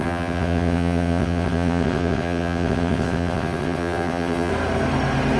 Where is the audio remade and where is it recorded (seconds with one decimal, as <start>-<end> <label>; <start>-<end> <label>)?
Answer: 0.0-4.5 remade; 4.5-5.4 recorded

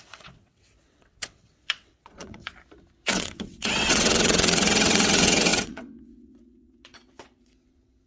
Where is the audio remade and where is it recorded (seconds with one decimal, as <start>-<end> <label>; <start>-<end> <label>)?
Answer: 0.0-2.4 remade; 2.4-3.1 recorded; 3.1-8.1 remade

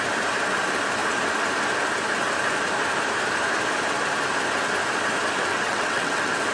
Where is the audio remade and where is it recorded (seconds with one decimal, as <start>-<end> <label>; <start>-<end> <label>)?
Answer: 0.0-5.5 recorded; 5.5-6.5 remade

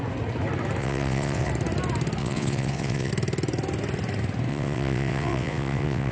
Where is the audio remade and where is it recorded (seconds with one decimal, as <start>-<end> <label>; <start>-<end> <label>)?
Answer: 0.0-0.8 recorded; 0.8-1.5 remade; 1.5-2.2 recorded; 2.2-3.1 remade; 3.1-4.5 recorded; 4.5-6.1 remade

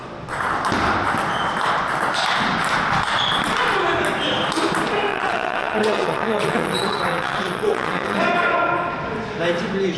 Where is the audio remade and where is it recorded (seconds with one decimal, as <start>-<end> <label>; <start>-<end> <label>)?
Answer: 0.0-5.1 recorded; 5.1-8.2 remade; 8.2-10.0 recorded

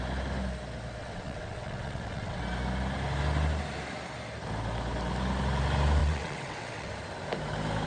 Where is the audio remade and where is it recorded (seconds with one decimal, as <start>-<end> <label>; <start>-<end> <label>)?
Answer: 0.0-1.0 recorded; 1.0-2.4 remade; 2.4-6.0 recorded; 6.0-6.9 remade; 6.9-7.9 recorded

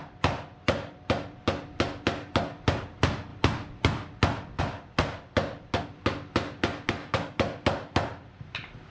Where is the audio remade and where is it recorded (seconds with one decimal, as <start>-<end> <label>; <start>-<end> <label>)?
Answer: 0.0-8.9 recorded